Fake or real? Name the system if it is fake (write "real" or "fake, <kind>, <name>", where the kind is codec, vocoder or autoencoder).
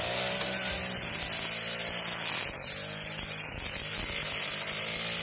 real